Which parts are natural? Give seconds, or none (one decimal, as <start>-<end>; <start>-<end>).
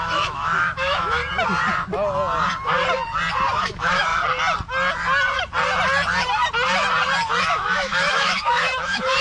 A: 1.2-3.6; 4.1-7.4